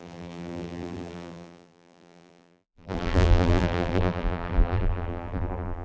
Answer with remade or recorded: remade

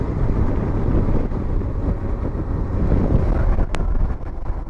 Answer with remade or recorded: recorded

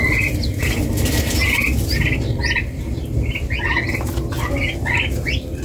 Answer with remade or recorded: recorded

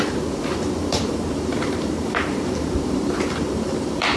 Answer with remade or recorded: remade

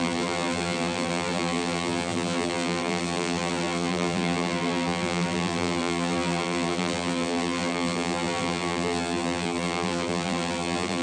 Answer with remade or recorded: remade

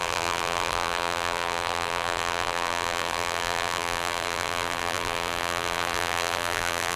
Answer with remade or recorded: remade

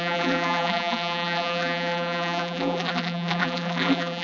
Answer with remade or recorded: remade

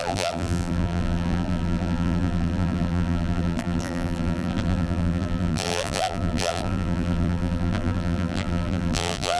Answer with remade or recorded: remade